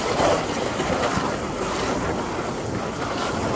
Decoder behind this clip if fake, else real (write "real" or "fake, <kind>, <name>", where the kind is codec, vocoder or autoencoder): real